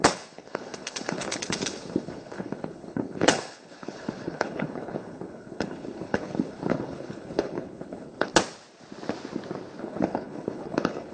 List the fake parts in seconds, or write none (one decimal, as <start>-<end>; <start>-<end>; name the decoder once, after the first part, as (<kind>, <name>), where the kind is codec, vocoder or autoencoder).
0.0-8.3 (codec, HILCodec); 9.8-11.1